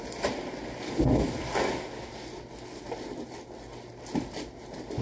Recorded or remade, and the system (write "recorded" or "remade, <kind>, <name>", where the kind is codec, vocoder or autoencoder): recorded